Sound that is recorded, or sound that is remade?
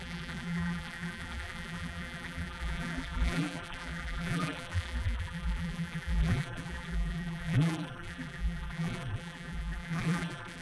remade